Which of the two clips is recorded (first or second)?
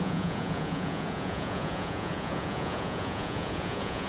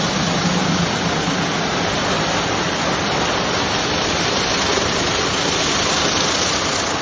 second